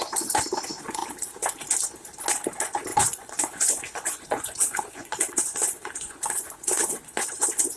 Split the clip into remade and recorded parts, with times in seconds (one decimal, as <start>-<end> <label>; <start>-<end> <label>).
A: 0.0-2.9 recorded; 2.9-7.8 remade